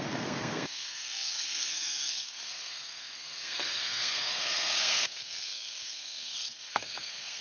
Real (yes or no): no